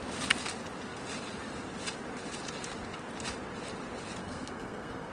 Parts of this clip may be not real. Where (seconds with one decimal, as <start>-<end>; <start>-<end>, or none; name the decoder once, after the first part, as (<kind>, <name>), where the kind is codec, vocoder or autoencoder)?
4.2-5.1 (codec, SNAC)